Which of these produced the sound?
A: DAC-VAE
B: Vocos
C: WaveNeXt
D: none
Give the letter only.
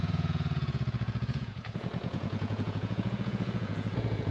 B